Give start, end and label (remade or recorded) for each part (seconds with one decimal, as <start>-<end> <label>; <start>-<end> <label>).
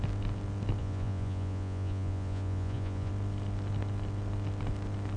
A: 0.0-0.8 recorded; 0.8-3.1 remade; 3.1-5.2 recorded